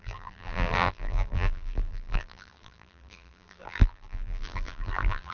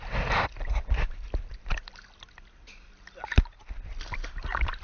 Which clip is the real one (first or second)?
second